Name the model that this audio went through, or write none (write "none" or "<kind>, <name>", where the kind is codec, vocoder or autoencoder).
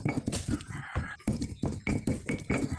none